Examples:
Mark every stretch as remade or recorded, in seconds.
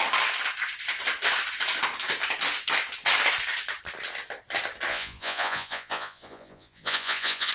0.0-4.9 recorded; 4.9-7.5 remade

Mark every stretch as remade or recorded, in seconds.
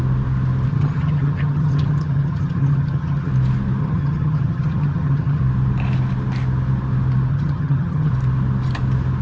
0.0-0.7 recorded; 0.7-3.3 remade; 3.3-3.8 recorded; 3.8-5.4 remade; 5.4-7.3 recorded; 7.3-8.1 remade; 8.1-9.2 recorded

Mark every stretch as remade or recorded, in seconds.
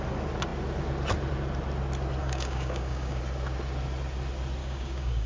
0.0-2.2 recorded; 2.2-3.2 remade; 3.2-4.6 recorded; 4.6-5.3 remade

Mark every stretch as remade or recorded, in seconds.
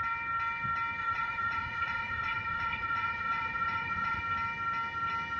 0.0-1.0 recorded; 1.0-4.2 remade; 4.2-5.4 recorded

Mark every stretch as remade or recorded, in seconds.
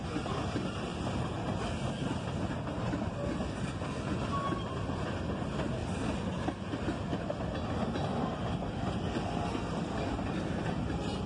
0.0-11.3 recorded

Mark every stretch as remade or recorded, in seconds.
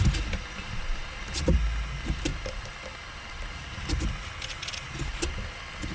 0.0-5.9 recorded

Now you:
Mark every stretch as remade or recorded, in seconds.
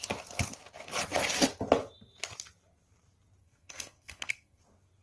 0.0-3.4 recorded; 3.4-4.6 remade; 4.6-5.0 recorded